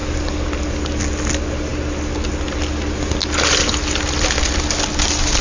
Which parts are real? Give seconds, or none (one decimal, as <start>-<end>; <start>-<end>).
0.0-5.4